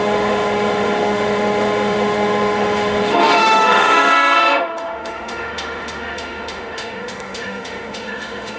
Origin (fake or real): fake